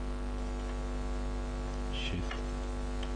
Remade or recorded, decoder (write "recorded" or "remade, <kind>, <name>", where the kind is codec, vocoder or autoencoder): recorded